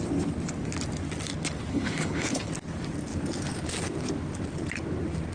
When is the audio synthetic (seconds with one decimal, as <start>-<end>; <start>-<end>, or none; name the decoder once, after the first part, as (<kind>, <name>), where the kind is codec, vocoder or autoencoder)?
1.7-2.5 (codec, HILCodec)